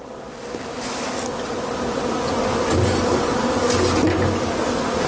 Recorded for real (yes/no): yes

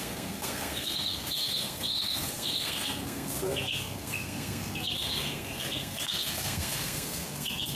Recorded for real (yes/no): no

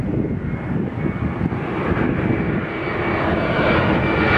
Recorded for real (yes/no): yes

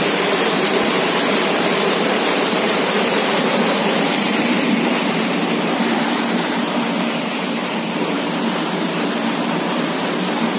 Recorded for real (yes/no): no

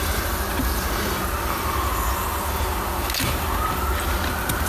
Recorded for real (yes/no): yes